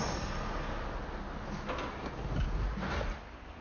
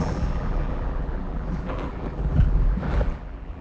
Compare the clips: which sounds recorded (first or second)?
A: first